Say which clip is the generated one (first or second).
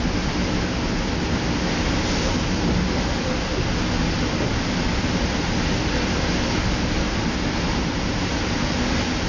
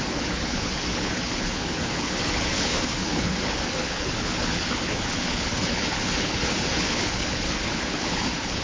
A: second